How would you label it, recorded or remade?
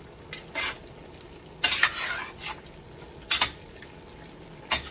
recorded